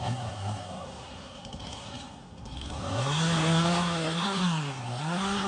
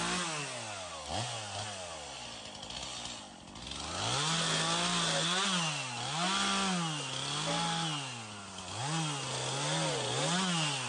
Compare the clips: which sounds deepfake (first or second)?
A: first